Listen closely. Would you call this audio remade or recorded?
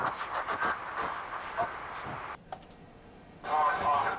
remade